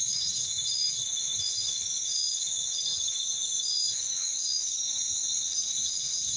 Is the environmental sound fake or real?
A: fake